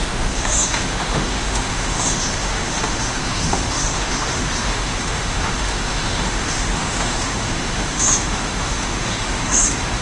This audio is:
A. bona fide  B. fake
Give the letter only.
B